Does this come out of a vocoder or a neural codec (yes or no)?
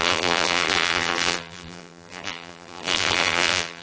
yes